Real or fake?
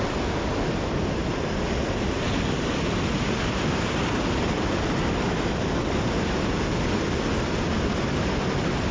real